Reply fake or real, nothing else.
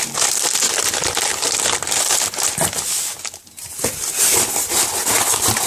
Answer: real